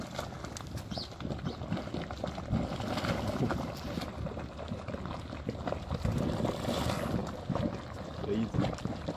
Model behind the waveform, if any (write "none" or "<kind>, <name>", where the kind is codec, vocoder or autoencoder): none